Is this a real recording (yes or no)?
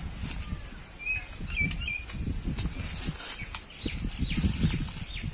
yes